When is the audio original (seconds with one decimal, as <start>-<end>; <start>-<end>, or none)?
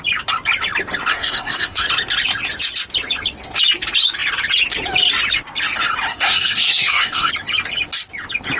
0.0-1.1; 1.9-6.1; 7.3-8.6